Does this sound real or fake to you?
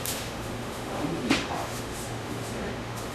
fake